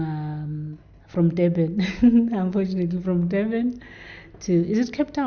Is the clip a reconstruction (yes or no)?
no